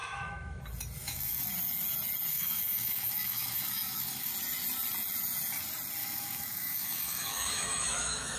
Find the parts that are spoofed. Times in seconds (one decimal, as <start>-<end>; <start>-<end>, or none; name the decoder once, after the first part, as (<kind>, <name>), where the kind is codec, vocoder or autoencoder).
0.0-0.6 (autoencoder, DAC-VAE); 1.0-1.5; 2.3-4.3; 6.0-8.4